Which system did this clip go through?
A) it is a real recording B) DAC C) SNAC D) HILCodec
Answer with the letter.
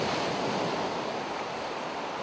A